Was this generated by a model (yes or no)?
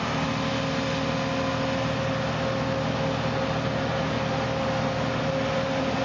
no